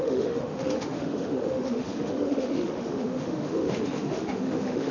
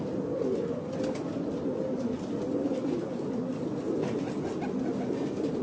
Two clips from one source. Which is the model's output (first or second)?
first